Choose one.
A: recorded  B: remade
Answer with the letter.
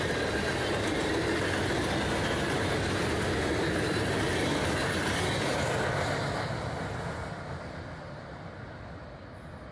A